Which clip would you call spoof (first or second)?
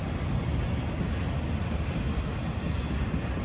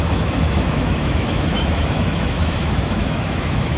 second